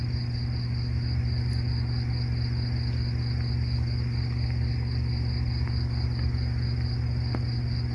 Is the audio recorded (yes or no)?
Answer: yes